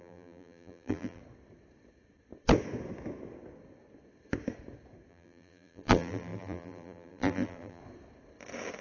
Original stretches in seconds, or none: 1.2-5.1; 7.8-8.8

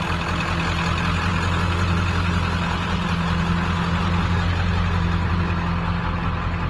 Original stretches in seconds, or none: 0.0-6.7

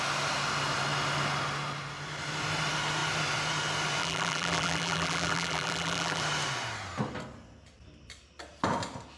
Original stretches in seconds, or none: 0.0-4.0; 6.2-9.2

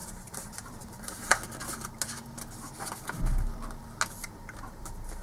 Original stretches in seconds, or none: 1.3-4.2

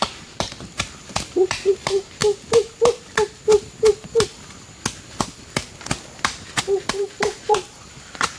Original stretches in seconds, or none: 2.2-6.6

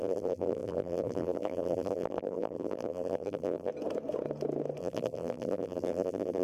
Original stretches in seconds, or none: 3.7-4.8

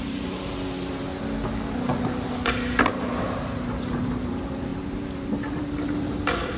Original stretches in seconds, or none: 1.1-3.1